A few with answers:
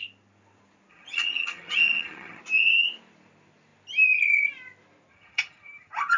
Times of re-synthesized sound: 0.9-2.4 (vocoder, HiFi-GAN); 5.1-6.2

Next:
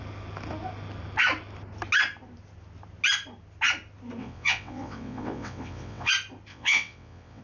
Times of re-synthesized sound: 4.2-6.1 (vocoder, WaveNeXt); 6.5-7.4

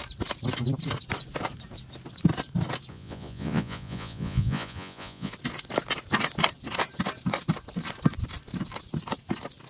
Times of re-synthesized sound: 2.9-5.3 (vocoder, Vocos)

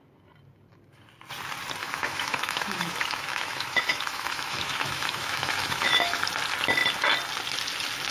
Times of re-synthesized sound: 1.8-6.2 (autoencoder, DAC-VAE)

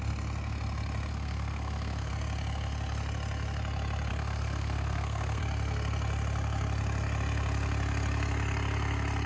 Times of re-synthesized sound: 1.1-2.1 (codec, SNAC); 4.1-5.4